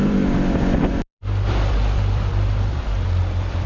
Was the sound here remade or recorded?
remade